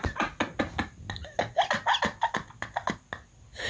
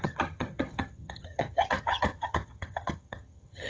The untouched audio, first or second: first